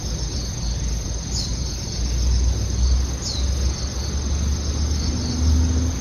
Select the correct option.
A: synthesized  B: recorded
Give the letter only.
B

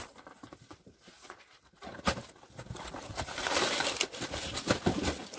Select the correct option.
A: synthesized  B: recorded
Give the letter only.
B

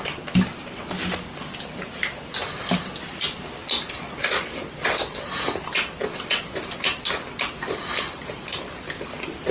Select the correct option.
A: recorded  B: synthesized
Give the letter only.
A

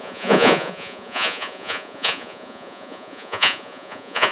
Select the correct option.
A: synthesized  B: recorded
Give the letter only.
A